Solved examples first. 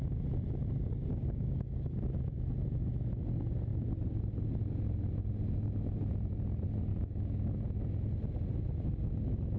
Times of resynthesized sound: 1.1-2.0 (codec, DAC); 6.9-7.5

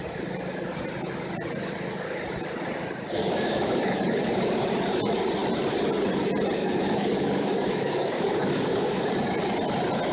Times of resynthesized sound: 3.2-4.4 (codec, DAC); 6.6-9.1

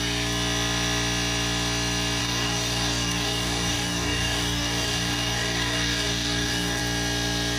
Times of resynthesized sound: 2.2-6.8 (codec, DAC)

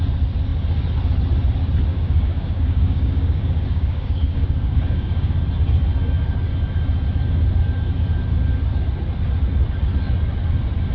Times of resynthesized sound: 1.9-5.3 (codec, DAC)

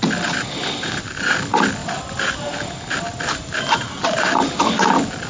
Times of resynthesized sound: none

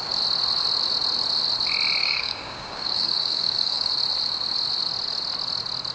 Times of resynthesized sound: 2.0-3.9 (codec, DAC)

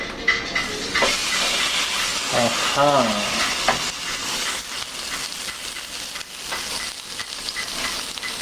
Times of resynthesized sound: 4.2-4.7 (codec, DAC)